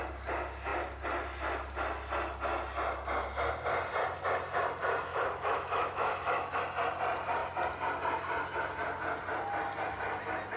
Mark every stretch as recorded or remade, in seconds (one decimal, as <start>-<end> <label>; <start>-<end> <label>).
0.0-5.1 recorded; 5.1-6.6 remade; 6.6-10.6 recorded